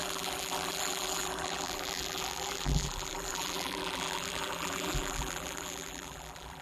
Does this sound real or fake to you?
fake